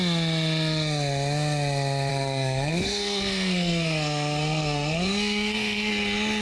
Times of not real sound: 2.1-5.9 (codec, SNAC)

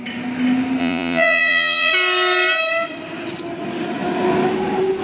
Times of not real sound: 0.8-1.9 (vocoder, Vocos)